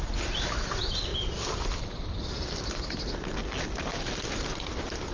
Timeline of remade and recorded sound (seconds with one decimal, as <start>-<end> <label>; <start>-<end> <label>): 0.0-5.1 recorded

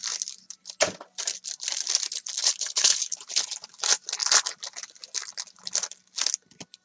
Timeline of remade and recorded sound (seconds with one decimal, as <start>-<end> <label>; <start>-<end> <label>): 0.0-2.4 recorded; 2.4-3.0 remade; 3.0-6.8 recorded